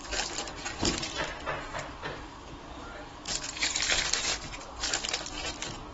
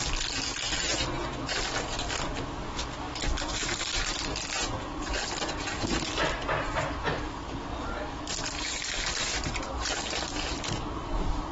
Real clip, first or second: second